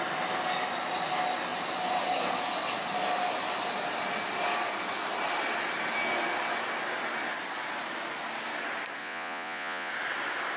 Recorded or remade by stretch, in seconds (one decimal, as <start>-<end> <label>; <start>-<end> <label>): 0.0-9.0 recorded; 9.0-9.9 remade; 9.9-10.6 recorded